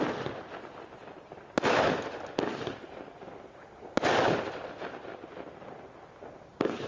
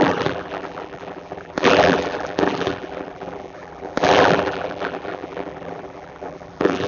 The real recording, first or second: first